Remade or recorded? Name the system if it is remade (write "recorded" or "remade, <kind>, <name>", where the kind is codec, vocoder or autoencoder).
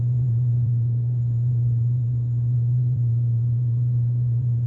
remade, vocoder, BigVGAN v2